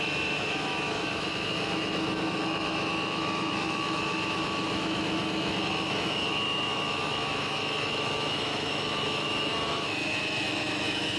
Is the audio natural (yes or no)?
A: no